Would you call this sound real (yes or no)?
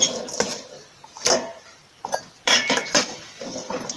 no